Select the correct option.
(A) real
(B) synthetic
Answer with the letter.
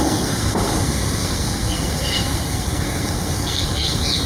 B